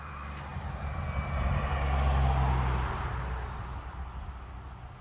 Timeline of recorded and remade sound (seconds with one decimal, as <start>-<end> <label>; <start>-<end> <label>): 0.0-5.0 recorded